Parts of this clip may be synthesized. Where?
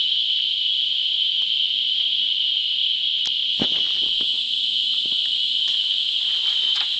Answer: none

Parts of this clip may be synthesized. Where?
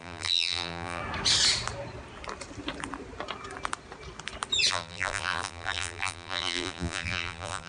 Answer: 0.0-1.0 (vocoder, BigVGAN v2); 4.7-7.7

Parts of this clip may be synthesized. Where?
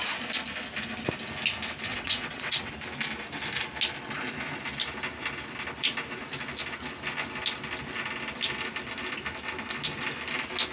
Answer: 1.9-2.7 (vocoder, WaveNeXt)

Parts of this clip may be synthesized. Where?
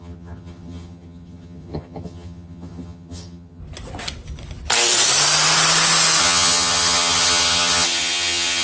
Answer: 0.0-3.6 (vocoder, HiFi-GAN); 6.2-8.6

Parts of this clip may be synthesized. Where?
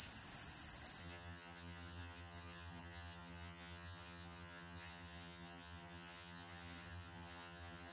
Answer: 1.0-7.9 (vocoder, HiFi-GAN)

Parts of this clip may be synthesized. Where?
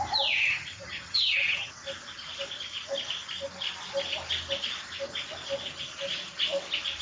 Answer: 0.4-1.7 (vocoder, HiFi-GAN)